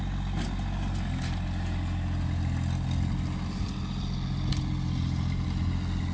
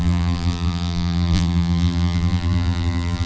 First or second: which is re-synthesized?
second